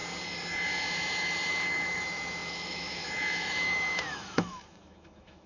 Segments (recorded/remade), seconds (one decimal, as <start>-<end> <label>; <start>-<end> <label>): 0.0-1.5 recorded; 1.5-5.5 remade